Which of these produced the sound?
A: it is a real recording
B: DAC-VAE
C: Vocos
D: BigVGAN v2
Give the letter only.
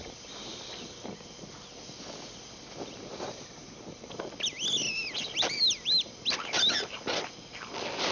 A